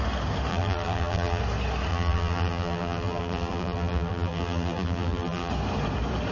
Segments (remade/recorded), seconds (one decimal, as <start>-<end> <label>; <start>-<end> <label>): 0.0-0.5 recorded; 0.5-1.4 remade; 1.4-1.9 recorded; 1.9-5.5 remade; 5.5-6.3 recorded

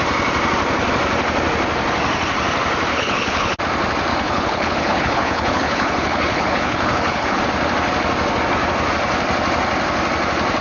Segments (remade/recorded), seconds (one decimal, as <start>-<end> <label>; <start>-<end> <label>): 0.0-2.9 recorded; 2.9-3.6 remade; 3.6-4.1 recorded; 4.1-7.4 remade; 7.4-10.6 recorded

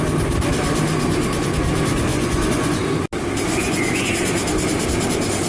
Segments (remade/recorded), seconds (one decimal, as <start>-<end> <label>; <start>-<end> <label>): 0.0-2.1 recorded; 2.1-2.8 remade; 2.8-3.5 recorded; 3.5-4.1 remade; 4.1-5.5 recorded

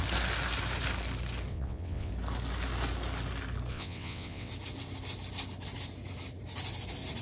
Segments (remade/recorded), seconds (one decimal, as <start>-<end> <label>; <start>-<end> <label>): 0.0-1.5 recorded; 1.5-2.1 remade; 2.1-3.7 recorded; 3.7-4.5 remade; 4.5-7.2 recorded